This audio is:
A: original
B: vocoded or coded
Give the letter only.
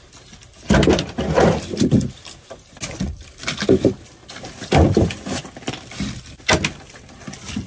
A